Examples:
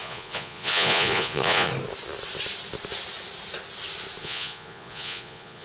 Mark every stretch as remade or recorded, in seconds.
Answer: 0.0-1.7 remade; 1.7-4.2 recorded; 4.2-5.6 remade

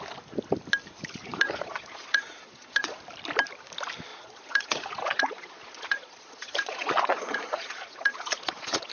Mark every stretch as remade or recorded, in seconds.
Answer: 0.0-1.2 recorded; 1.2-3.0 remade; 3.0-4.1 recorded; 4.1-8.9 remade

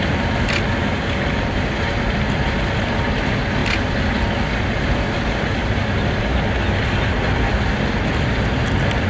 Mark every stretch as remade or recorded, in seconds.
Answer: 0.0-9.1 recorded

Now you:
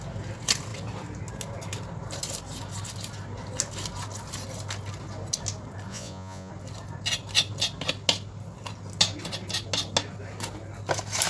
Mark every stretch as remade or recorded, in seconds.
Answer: 0.0-5.9 recorded; 5.9-6.5 remade; 6.5-11.3 recorded

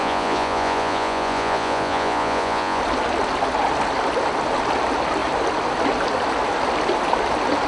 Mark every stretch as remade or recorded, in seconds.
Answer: 0.0-2.8 remade; 2.8-7.7 recorded